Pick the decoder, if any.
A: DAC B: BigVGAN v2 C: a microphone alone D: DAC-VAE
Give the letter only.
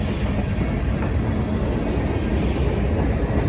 C